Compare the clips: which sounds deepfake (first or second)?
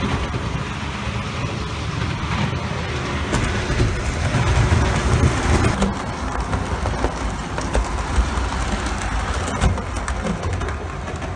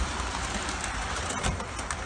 second